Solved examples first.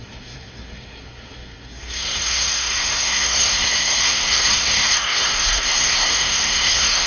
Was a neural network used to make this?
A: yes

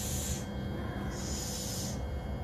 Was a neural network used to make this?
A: no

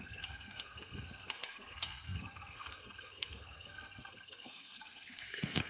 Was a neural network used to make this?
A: yes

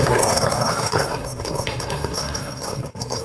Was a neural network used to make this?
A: yes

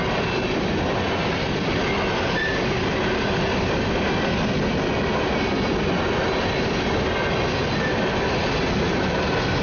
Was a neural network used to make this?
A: no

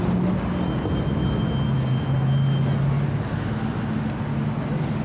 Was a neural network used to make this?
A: no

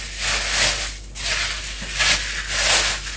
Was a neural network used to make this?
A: no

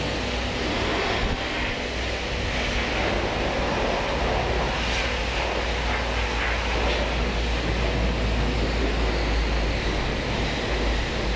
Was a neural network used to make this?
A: no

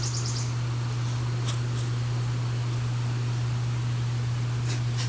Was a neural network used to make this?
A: no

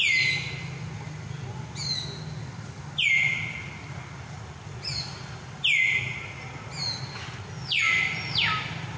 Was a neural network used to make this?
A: no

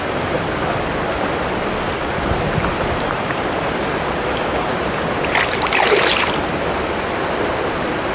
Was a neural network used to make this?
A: no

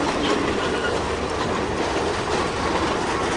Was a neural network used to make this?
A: no